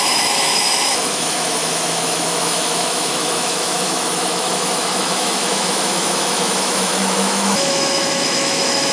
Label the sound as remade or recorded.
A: remade